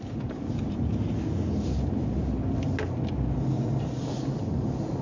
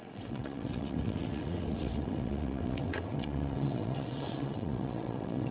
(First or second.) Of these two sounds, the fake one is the second